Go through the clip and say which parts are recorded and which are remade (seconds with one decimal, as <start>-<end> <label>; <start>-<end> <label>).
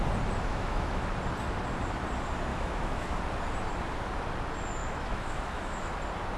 0.0-0.5 recorded; 0.5-1.1 remade; 1.1-2.5 recorded; 2.5-3.2 remade; 3.2-4.8 recorded; 4.8-5.9 remade; 5.9-6.4 recorded